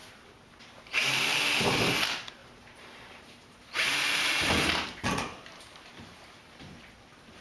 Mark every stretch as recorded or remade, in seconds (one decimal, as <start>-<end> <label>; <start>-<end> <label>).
0.0-1.4 remade; 1.4-2.4 recorded; 2.4-6.8 remade; 6.8-7.4 recorded